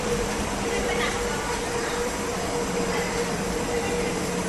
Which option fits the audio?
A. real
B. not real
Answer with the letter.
B